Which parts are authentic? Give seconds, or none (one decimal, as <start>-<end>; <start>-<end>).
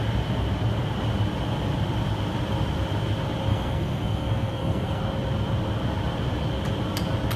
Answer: 0.0-3.5; 5.0-7.4